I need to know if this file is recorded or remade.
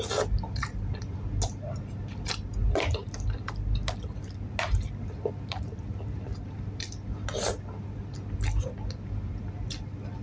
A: recorded